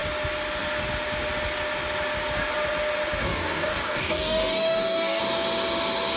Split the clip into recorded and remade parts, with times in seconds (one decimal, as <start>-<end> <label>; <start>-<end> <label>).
0.0-3.2 recorded; 3.2-5.2 remade; 5.2-6.2 recorded